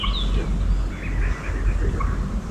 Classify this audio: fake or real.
real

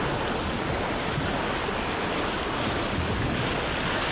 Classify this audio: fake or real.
real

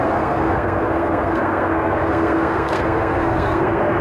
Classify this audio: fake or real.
fake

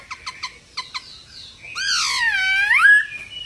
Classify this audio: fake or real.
real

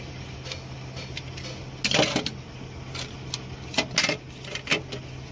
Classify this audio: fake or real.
real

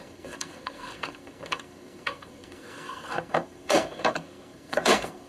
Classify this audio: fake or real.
fake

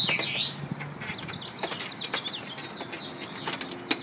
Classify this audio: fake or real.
real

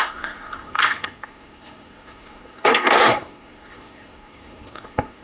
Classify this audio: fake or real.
fake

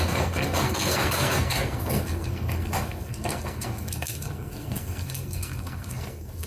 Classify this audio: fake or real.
fake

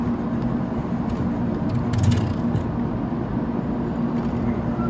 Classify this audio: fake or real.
real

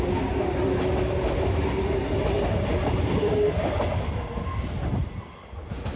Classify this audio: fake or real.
real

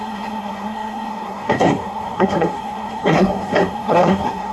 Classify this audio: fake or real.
fake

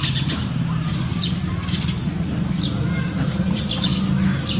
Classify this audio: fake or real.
real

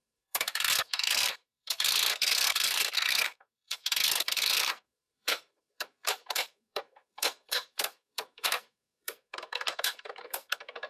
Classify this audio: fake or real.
fake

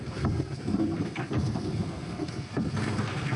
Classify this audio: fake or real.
fake